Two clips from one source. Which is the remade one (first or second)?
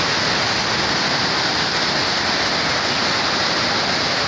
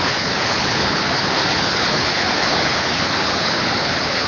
second